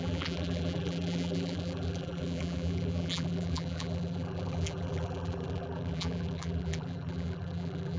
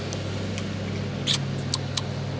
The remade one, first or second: first